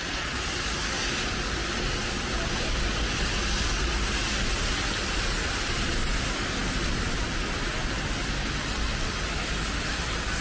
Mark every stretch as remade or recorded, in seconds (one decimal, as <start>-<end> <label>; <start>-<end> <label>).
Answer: 0.0-10.4 recorded